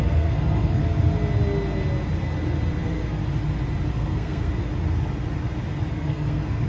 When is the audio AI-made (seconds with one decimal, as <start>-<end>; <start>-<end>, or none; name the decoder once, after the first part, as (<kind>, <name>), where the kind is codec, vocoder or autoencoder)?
0.0-0.8 (codec, SNAC); 2.8-3.2; 3.9-4.7; 5.9-6.7